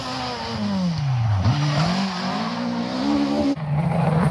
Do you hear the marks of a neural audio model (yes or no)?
no